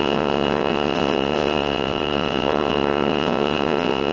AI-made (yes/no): yes